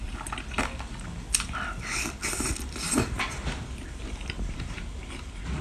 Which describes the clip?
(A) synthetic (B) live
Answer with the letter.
B